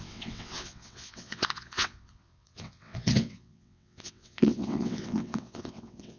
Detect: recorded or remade remade